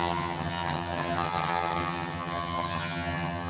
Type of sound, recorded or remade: remade